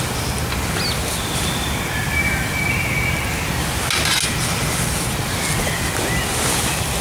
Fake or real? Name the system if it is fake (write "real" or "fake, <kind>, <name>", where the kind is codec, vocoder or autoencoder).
real